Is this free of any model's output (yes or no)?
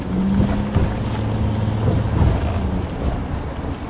yes